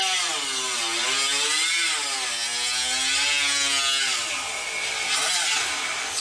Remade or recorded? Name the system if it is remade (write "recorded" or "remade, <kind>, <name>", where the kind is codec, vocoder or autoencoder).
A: recorded